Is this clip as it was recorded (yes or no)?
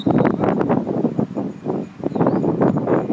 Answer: yes